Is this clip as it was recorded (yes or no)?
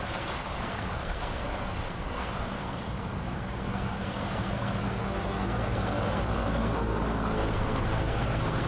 no